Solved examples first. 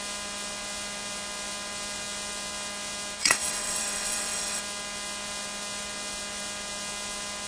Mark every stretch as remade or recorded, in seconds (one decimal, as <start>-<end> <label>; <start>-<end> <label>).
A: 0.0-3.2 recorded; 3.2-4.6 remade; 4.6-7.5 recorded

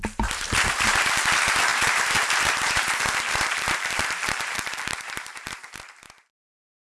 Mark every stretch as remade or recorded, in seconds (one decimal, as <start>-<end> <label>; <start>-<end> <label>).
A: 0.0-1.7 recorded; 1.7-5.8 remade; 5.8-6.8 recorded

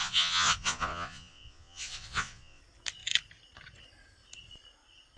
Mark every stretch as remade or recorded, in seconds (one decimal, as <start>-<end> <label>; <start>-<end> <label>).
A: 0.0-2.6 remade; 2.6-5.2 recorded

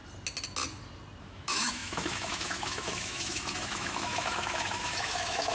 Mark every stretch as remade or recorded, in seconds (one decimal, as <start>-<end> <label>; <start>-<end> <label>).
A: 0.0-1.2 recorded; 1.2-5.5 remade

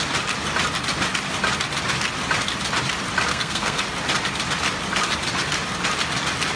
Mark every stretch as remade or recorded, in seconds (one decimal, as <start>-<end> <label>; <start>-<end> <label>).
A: 0.0-3.3 recorded; 3.3-3.8 remade; 3.8-6.6 recorded

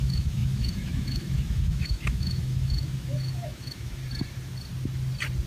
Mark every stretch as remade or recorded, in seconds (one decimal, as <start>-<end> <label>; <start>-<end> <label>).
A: 0.0-4.0 remade; 4.0-5.5 recorded